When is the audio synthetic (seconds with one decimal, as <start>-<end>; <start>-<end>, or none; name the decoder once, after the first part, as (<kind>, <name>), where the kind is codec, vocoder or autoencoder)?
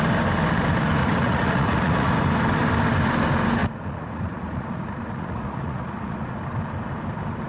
1.0-2.1 (vocoder, Vocos); 3.6-6.4